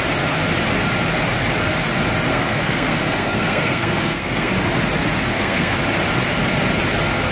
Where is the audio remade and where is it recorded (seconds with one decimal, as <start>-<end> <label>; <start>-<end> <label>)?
0.0-2.3 recorded; 2.3-4.5 remade; 4.5-5.3 recorded; 5.3-5.8 remade; 5.8-7.3 recorded

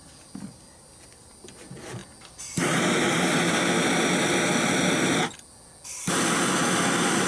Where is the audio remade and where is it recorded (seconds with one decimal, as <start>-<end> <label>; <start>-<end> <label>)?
0.0-7.3 recorded

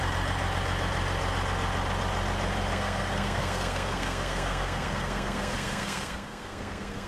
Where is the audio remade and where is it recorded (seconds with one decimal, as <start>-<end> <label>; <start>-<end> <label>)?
0.0-2.7 recorded; 2.7-7.1 remade

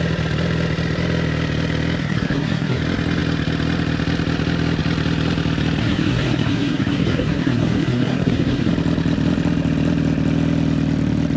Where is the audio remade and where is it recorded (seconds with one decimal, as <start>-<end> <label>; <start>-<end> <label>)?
0.0-2.0 recorded; 2.0-2.8 remade; 2.8-5.8 recorded; 5.8-8.7 remade; 8.7-11.4 recorded

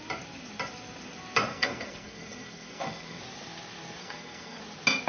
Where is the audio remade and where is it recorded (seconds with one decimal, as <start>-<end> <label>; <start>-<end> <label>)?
0.0-1.5 recorded; 1.5-3.2 remade; 3.2-4.0 recorded; 4.0-4.6 remade; 4.6-5.1 recorded

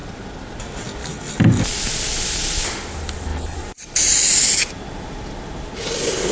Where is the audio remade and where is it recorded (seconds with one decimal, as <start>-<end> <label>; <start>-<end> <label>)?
0.0-6.3 recorded

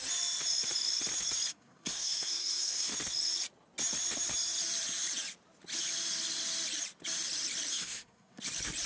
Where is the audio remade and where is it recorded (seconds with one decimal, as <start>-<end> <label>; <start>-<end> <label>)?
0.0-1.5 recorded; 1.5-2.9 remade; 2.9-7.7 recorded; 7.7-8.4 remade; 8.4-8.9 recorded

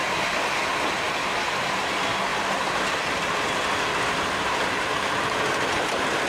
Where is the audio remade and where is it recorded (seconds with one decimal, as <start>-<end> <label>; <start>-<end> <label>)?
0.0-6.3 recorded